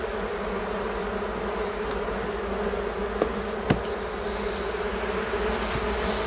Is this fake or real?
real